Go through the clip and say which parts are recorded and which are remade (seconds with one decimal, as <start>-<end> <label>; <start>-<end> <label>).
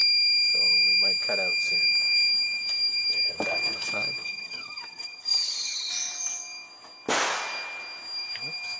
0.0-4.2 recorded; 4.2-5.9 remade; 5.9-8.8 recorded